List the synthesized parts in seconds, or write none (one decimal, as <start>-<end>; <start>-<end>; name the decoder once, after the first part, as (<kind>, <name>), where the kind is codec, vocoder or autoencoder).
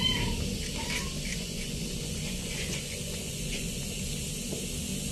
1.3-3.8 (vocoder, Vocos)